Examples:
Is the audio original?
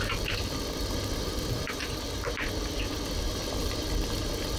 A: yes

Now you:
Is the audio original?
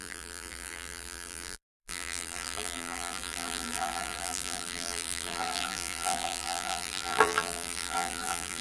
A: no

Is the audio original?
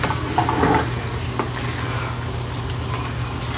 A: yes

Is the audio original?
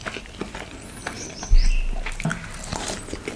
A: yes